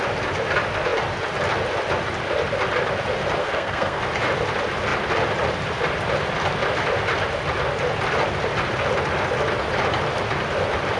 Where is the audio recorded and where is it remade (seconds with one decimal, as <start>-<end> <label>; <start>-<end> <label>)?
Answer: 0.0-3.4 recorded; 3.4-4.0 remade; 4.0-11.0 recorded